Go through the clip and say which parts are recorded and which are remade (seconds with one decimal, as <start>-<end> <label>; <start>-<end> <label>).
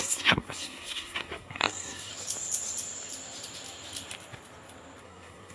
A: 0.0-2.1 remade; 2.1-5.0 recorded; 5.0-5.5 remade